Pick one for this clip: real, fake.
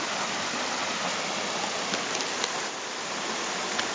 real